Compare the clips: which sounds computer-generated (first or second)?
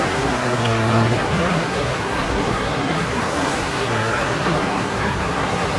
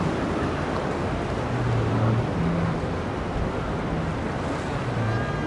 first